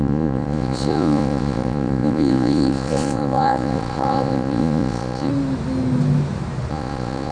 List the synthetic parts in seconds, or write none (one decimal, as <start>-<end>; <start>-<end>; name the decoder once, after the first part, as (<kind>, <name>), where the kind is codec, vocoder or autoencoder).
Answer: 0.0-5.3 (vocoder, Vocos); 6.7-7.3